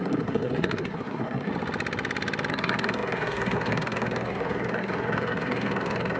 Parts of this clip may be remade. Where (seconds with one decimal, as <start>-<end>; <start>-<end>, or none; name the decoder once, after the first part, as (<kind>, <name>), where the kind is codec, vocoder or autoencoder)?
0.0-1.5 (codec, SNAC); 2.5-6.2